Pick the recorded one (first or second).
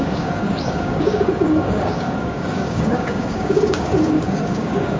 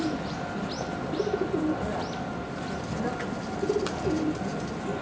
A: second